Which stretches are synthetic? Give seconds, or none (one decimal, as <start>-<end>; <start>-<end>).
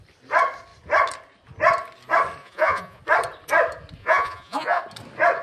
2.4-3.0; 4.0-4.8